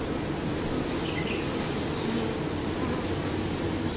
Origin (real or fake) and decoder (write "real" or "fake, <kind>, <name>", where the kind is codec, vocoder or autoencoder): real